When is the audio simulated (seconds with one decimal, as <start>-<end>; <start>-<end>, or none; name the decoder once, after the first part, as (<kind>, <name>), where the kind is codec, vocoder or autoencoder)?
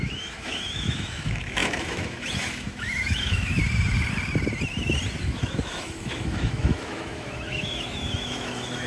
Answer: 0.0-3.6 (autoencoder, DAC-VAE); 5.2-8.9